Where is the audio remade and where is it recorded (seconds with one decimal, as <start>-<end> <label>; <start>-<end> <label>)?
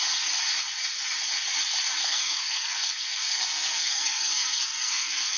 0.0-2.0 recorded; 2.0-5.4 remade